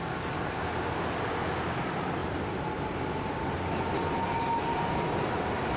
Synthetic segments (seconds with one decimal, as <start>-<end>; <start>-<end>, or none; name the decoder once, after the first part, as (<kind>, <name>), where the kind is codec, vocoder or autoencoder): 2.2-5.8 (vocoder, BigVGAN v2)